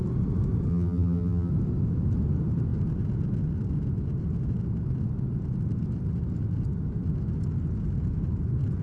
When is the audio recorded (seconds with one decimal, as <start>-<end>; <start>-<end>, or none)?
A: 0.0-0.7; 1.5-8.8